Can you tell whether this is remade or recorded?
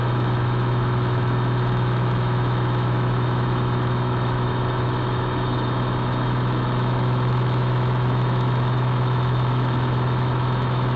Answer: remade